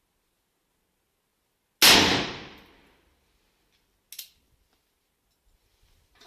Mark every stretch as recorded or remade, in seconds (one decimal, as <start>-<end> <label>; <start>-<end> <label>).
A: 0.0-6.3 recorded